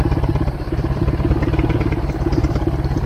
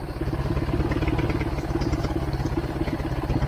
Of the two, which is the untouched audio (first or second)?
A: second